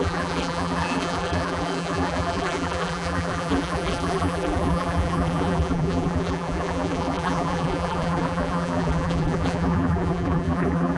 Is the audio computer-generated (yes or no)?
yes